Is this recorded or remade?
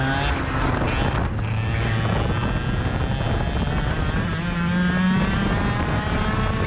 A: recorded